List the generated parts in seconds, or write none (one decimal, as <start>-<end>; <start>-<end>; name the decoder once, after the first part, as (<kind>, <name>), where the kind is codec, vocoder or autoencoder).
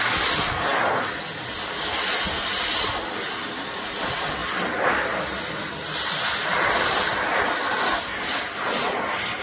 none